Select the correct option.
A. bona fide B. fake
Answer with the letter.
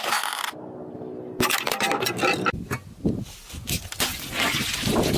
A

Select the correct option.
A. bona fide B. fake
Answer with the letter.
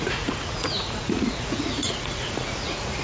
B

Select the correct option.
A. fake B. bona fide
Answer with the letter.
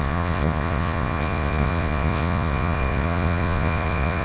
A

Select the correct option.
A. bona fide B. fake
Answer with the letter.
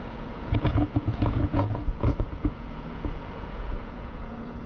B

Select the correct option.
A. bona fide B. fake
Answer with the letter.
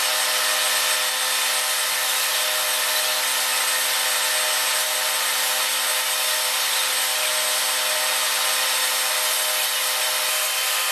A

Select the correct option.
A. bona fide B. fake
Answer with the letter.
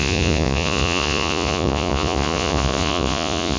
B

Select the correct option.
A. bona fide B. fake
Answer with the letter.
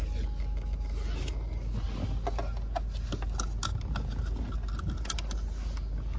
A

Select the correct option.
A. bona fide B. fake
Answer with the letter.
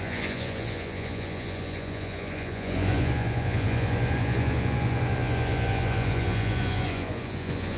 B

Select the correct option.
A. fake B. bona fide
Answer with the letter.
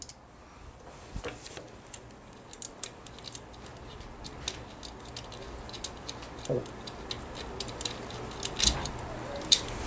B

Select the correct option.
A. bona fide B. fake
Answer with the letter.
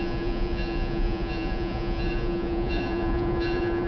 B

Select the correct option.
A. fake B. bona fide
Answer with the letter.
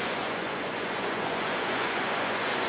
A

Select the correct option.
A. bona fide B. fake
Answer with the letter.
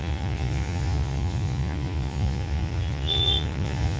B